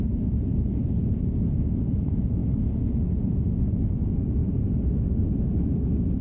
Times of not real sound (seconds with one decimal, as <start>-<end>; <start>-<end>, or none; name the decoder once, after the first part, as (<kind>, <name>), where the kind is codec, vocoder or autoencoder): 0.0-0.5 (vocoder, Vocos); 1.1-2.4; 3.6-4.4